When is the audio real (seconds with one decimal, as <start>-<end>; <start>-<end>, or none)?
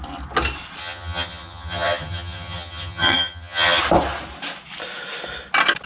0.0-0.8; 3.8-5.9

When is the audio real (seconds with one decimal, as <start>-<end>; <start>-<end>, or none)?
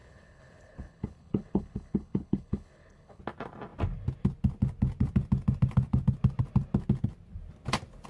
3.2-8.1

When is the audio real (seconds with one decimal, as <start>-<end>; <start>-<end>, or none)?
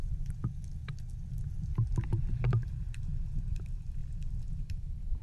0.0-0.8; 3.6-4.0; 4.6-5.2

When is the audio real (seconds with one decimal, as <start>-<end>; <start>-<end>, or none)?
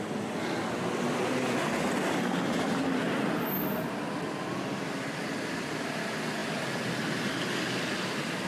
0.0-8.5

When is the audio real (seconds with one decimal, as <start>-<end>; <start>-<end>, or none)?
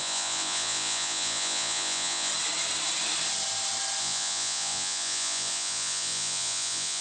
2.3-4.0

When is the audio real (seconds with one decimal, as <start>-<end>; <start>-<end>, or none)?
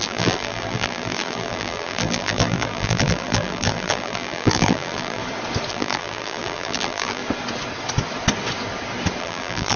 5.2-5.7; 7.2-9.2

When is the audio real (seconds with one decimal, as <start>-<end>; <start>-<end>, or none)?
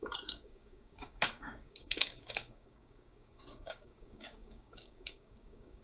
none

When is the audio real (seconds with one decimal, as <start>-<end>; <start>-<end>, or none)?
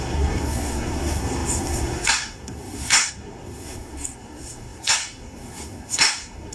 none